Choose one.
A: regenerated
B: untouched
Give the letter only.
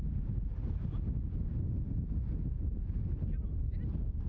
B